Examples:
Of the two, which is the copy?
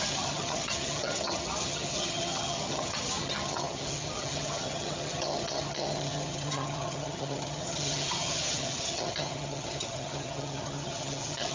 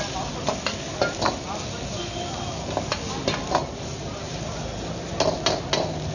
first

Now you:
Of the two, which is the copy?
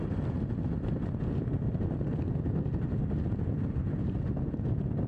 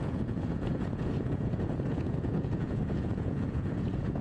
second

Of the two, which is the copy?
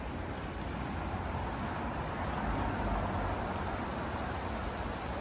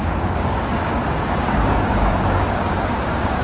second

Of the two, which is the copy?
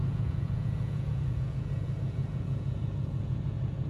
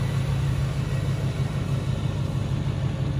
first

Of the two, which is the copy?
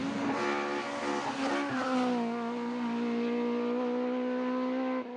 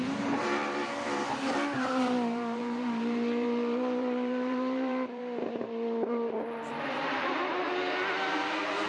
second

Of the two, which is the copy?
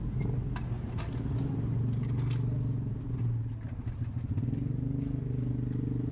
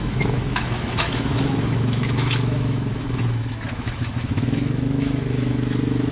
second